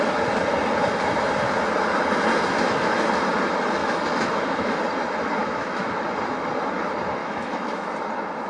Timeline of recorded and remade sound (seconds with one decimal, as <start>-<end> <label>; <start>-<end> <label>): 0.0-3.8 recorded; 3.8-4.7 remade; 4.7-5.4 recorded; 5.4-6.0 remade; 6.0-7.2 recorded; 7.2-7.9 remade; 7.9-8.5 recorded